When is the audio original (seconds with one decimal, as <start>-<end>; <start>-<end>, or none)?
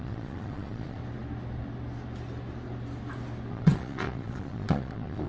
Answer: 1.0-3.5